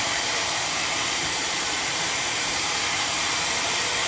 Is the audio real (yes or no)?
no